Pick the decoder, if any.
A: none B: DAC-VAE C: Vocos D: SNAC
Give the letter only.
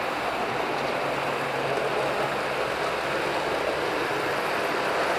A